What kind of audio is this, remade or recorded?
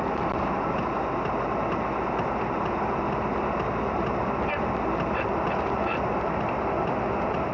recorded